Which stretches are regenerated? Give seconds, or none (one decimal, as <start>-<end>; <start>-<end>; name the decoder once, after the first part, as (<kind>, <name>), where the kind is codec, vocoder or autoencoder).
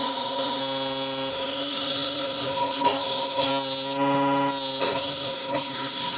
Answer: 0.0-0.6 (codec, SNAC); 1.3-3.5; 4.8-6.2